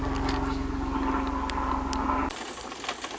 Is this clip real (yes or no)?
yes